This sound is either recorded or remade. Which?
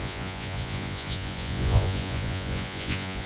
remade